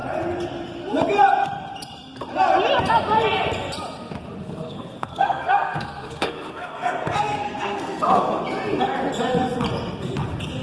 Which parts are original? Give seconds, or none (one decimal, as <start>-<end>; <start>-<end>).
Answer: 0.0-4.4; 8.4-10.6